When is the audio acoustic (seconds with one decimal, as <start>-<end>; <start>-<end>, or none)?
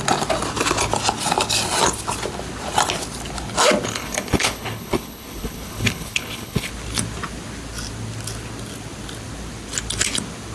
0.0-3.9; 6.7-10.5